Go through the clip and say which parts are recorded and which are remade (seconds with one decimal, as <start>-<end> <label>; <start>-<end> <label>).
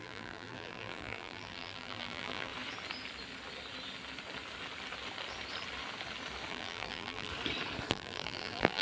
0.0-2.5 remade; 2.5-6.5 recorded; 6.5-7.3 remade; 7.3-7.9 recorded; 7.9-8.8 remade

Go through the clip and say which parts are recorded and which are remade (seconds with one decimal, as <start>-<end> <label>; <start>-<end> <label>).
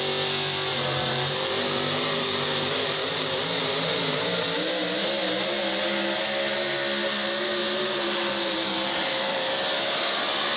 0.0-0.7 recorded; 0.7-4.2 remade; 4.2-7.6 recorded; 7.6-9.5 remade; 9.5-10.6 recorded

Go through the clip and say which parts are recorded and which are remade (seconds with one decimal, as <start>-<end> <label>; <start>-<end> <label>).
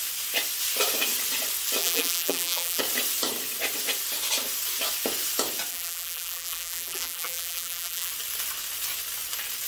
0.0-1.8 recorded; 1.8-2.8 remade; 2.8-5.7 recorded; 5.7-8.1 remade; 8.1-9.7 recorded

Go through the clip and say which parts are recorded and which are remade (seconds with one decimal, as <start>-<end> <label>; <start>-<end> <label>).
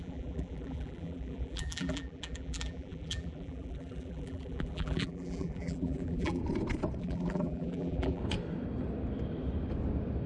0.0-6.4 remade; 6.4-7.0 recorded; 7.0-8.2 remade; 8.2-10.3 recorded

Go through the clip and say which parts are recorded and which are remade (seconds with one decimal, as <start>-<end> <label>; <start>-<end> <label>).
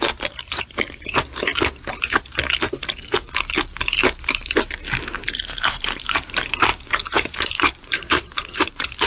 0.0-1.5 remade; 1.5-5.2 recorded; 5.2-9.1 remade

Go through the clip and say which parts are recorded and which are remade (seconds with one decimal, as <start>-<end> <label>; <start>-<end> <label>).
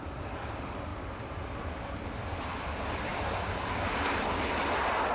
0.0-0.9 recorded; 0.9-2.4 remade; 2.4-5.1 recorded